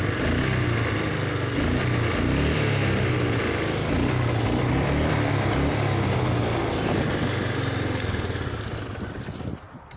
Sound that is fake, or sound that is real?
real